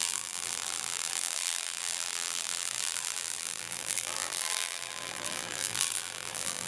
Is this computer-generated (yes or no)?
yes